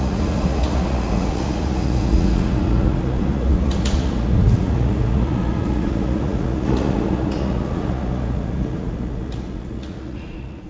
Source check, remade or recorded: remade